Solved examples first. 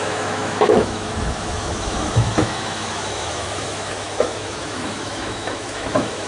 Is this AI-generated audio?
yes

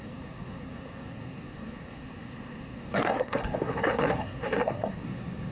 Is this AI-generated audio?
yes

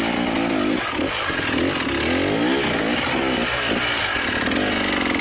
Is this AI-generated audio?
no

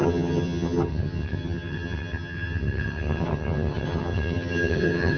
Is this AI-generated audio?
yes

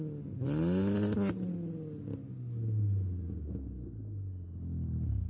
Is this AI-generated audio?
no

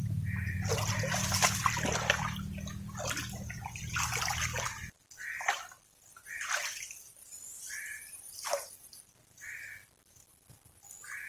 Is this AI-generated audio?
no